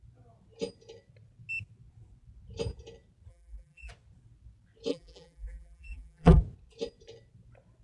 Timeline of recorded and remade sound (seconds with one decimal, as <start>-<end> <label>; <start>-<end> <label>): 0.0-3.3 recorded; 3.3-3.9 remade; 3.9-4.9 recorded; 4.9-6.4 remade; 6.4-7.8 recorded

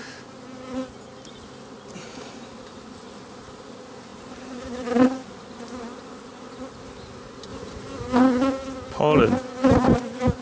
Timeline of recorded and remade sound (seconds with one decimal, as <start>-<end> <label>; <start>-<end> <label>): 0.0-4.1 recorded; 4.1-5.6 remade; 5.6-10.4 recorded

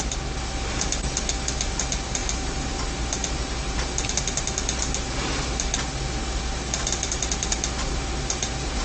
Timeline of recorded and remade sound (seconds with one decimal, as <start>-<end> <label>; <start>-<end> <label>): 0.0-2.2 recorded; 2.2-2.7 remade; 2.7-8.8 recorded

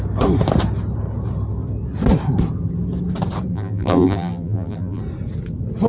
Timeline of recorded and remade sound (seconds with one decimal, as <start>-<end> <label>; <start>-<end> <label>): 0.0-3.5 recorded; 3.5-5.0 remade; 5.0-5.9 recorded

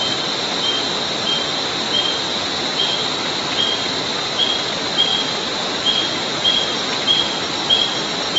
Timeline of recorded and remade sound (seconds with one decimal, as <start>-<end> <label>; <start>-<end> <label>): 0.0-8.4 recorded